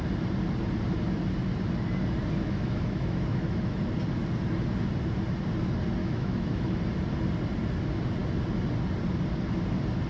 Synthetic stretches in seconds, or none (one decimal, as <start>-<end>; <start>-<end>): 2.4-3.8; 6.0-6.8